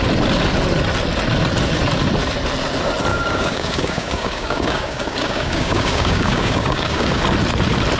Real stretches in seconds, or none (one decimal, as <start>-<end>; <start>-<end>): 0.0-3.1; 7.2-8.0